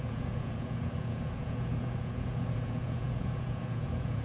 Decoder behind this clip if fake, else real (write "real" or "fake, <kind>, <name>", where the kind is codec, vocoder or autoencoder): fake, vocoder, Vocos